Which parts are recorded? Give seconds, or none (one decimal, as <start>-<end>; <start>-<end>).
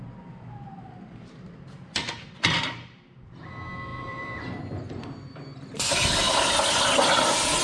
0.0-2.0; 3.5-3.9; 4.6-7.6